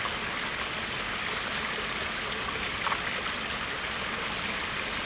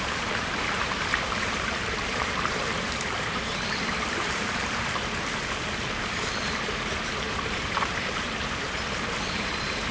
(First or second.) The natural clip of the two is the first